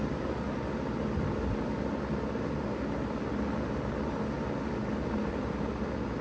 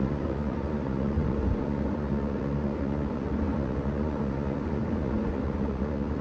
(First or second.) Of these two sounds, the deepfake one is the second